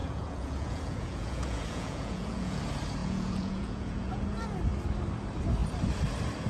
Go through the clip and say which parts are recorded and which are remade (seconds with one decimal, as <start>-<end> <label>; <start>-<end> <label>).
0.0-2.6 remade; 2.6-3.0 recorded; 3.0-4.2 remade; 4.2-6.5 recorded